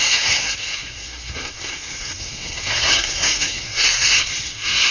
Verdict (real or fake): fake